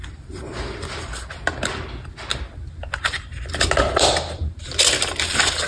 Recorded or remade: recorded